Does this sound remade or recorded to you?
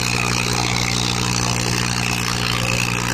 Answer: recorded